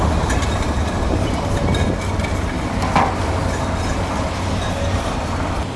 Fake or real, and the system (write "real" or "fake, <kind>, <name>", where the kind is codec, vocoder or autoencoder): real